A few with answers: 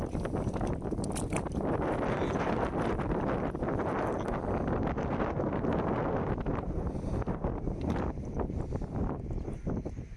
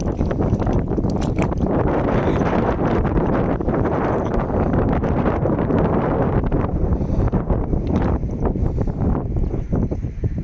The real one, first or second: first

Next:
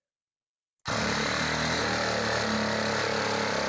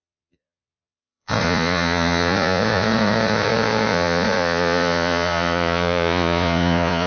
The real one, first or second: first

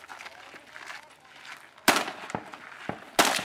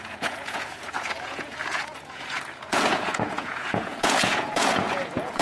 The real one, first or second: first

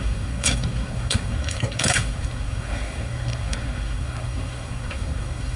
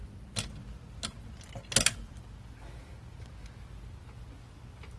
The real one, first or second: second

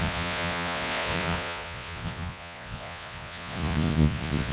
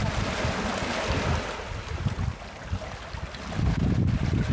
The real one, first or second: second